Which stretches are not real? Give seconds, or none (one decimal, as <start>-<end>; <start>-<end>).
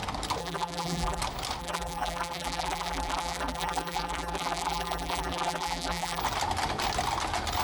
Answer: 0.4-1.2; 1.6-6.2